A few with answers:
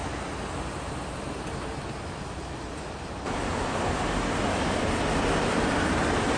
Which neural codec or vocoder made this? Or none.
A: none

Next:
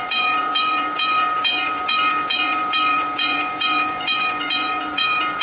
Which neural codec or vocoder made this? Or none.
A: vocoder, Vocos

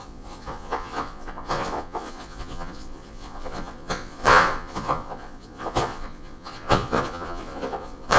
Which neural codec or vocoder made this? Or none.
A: vocoder, Vocos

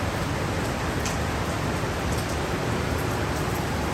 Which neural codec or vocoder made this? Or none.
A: none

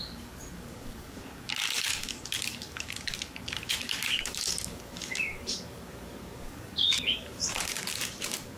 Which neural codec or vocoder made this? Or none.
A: codec, DAC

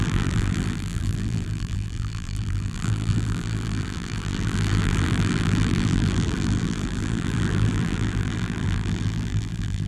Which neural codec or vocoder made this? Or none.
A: vocoder, BigVGAN v2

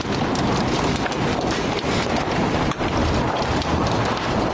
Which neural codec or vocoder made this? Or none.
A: none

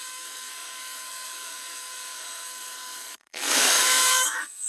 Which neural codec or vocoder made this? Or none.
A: codec, SNAC